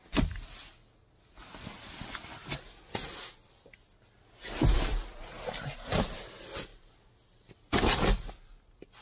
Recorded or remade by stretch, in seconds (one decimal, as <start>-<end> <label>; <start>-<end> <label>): 0.0-9.0 recorded